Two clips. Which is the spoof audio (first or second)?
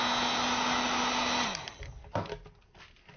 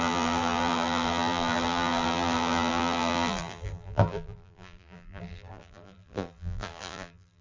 second